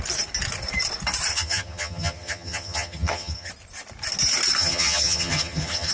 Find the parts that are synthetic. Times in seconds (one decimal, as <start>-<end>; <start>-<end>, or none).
1.3-3.5; 4.6-5.9

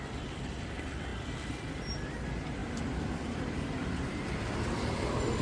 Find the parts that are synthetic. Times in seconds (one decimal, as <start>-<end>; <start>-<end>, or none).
0.0-5.4